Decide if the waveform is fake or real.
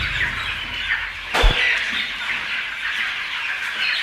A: real